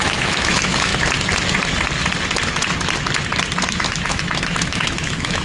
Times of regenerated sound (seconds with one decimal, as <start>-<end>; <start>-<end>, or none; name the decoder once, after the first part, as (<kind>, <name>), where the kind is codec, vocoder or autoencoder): 0.0-0.9 (autoencoder, DAC-VAE); 3.7-5.4